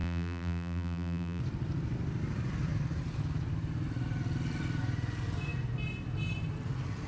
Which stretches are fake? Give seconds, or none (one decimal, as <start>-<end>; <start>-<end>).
0.0-1.4